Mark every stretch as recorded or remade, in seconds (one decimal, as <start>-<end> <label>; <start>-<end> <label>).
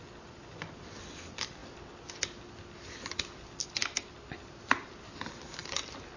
0.0-6.2 recorded